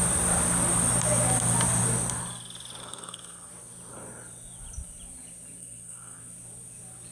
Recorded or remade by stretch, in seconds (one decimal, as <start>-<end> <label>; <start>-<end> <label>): 0.0-2.8 recorded; 2.8-3.5 remade; 3.5-5.6 recorded; 5.6-6.2 remade; 6.2-7.1 recorded